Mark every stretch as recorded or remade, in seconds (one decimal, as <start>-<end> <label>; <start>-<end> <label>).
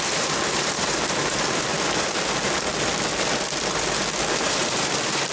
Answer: 0.0-1.7 remade; 1.7-4.3 recorded; 4.3-5.3 remade